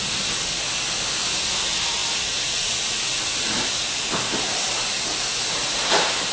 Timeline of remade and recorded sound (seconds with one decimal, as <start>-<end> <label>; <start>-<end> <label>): 0.0-6.3 recorded